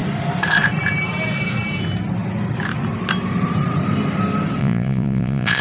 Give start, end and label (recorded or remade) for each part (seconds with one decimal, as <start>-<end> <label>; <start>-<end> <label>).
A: 0.0-4.6 recorded; 4.6-5.6 remade